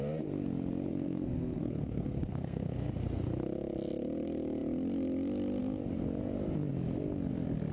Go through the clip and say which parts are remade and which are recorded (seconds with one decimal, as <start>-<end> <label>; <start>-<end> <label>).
0.0-0.9 recorded; 0.9-2.9 remade; 2.9-7.7 recorded